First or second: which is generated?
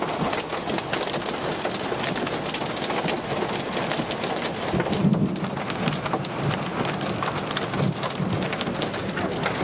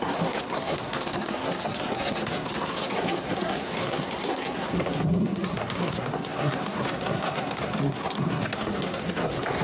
second